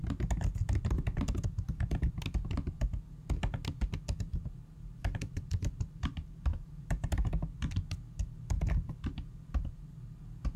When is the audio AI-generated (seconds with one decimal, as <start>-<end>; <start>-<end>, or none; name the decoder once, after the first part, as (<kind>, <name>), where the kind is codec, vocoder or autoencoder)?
4.3-7.1 (vocoder, BigVGAN v2)